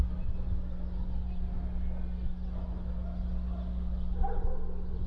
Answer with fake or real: real